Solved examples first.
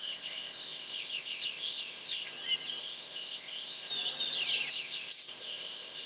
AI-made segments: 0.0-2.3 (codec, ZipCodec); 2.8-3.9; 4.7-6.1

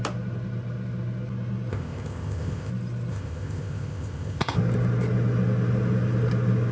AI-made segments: 1.7-2.7 (codec, ZipCodec); 3.1-4.6

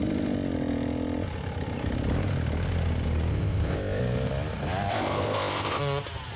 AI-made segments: 3.3-4.0 (codec, ZipCodec); 4.9-5.8

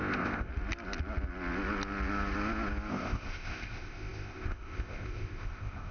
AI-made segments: 0.0-0.5 (codec, ZipCodec); 2.9-5.9

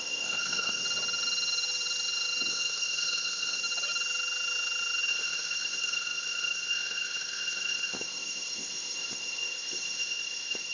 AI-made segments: 0.0-0.8 (codec, ZipCodec); 2.5-3.6; 5.1-10.7

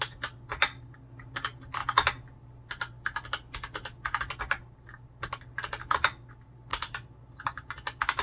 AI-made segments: none

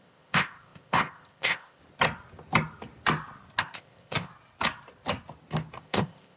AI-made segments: 0.0-1.8 (codec, ZipCodec); 3.6-4.3; 5.8-6.4